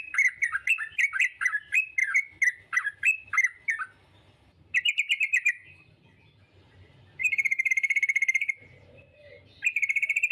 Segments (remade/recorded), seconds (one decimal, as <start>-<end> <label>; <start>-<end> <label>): 0.0-7.2 recorded; 7.2-7.7 remade; 7.7-10.3 recorded